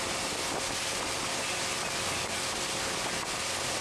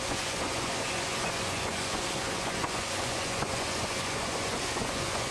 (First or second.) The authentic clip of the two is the first